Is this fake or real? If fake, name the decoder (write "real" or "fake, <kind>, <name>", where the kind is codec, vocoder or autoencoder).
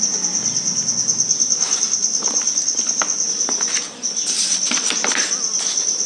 real